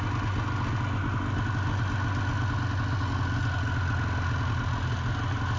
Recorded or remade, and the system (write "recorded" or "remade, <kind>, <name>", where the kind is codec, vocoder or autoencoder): recorded